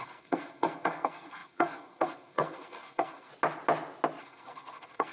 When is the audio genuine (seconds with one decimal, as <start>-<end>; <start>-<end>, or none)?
3.3-4.2